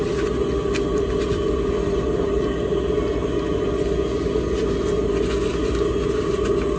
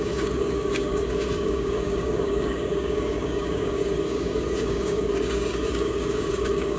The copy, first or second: second